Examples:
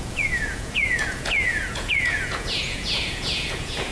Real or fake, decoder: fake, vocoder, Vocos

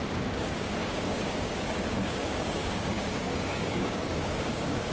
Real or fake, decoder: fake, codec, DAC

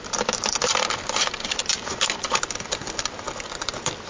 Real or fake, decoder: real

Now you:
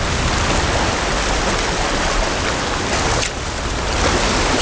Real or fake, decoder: real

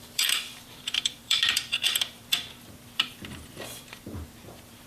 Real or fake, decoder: fake, vocoder, BigVGAN v2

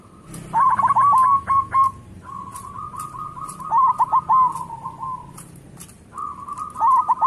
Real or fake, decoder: real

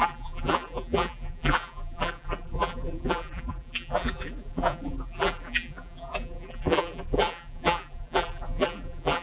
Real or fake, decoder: fake, vocoder, BigVGAN v2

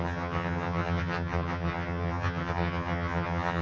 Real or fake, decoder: fake, vocoder, HiFi-GAN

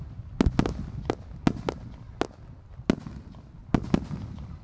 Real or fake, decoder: real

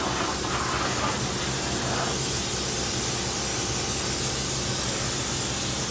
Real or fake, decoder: real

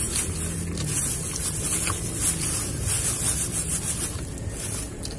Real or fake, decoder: real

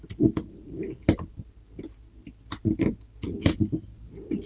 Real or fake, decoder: real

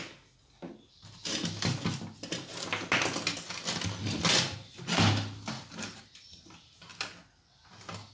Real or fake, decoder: real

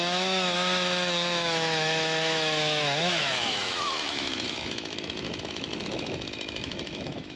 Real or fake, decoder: fake, autoencoder, DAC-VAE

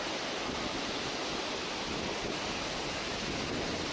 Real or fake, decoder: real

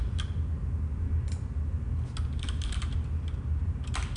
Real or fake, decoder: real